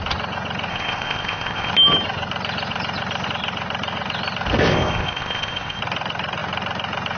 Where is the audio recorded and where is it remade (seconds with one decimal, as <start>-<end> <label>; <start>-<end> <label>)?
0.0-0.7 recorded; 0.7-1.7 remade; 1.7-4.7 recorded; 4.7-5.8 remade; 5.8-7.2 recorded